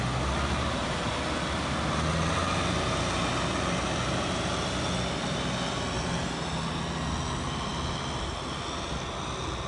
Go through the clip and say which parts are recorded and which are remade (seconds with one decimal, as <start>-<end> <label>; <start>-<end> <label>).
0.0-9.7 recorded